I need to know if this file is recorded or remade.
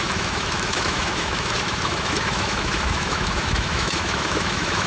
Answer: remade